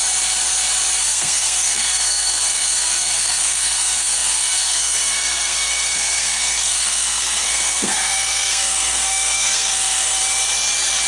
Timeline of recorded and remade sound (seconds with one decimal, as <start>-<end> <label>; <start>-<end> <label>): 0.0-1.0 recorded; 1.0-10.2 remade; 10.2-11.1 recorded